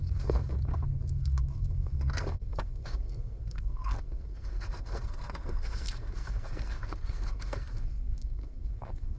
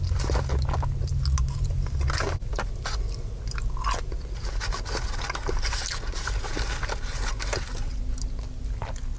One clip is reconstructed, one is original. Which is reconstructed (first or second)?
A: first